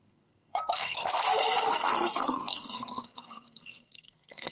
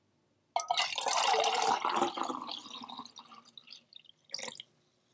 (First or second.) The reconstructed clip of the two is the first